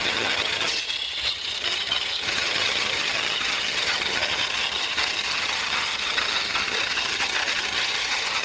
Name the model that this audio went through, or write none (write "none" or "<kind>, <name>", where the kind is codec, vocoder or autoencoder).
vocoder, HiFi-GAN